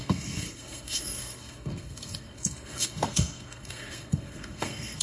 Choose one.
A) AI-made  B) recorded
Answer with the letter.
A